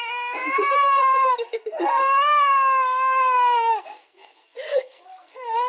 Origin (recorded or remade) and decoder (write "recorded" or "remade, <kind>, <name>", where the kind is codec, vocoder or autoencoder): remade, codec, SNAC